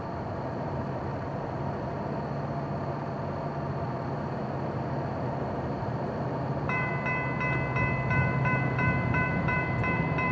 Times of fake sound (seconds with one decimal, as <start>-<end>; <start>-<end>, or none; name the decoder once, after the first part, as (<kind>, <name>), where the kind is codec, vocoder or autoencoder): 0.0-1.1 (vocoder, BigVGAN v2); 5.4-6.9; 8.1-10.3